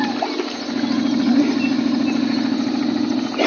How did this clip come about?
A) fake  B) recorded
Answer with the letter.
B